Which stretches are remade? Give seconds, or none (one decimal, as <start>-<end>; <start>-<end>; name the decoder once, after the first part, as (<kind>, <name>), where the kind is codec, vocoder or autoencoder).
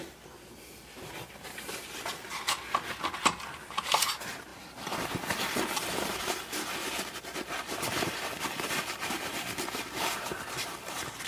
none